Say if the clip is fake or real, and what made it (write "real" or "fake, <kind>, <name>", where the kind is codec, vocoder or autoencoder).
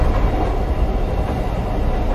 real